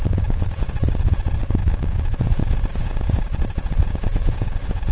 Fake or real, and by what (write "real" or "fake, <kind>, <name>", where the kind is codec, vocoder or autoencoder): fake, vocoder, Vocos